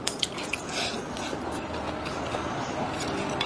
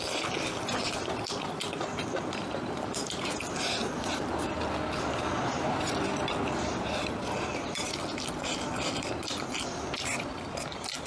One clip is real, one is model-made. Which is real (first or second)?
first